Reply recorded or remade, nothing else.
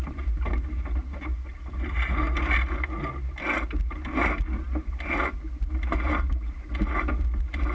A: recorded